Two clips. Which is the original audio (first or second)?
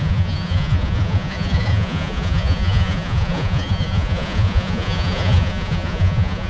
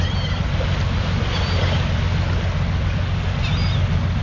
second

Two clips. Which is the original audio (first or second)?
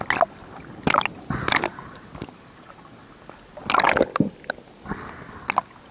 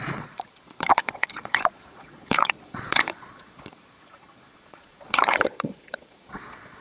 first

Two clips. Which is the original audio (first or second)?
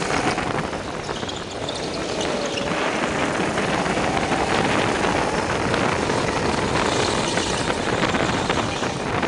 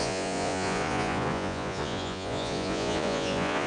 first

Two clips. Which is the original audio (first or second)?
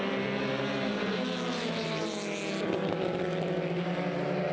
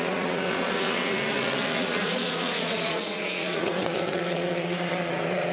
first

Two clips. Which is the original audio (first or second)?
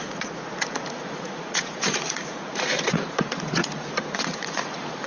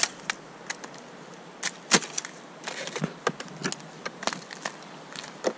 second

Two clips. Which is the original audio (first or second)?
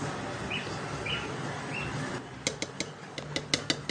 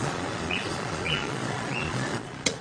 first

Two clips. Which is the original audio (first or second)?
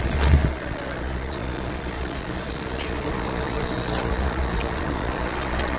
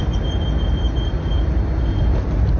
second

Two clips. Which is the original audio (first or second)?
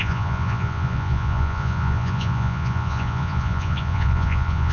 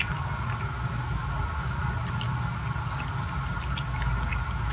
second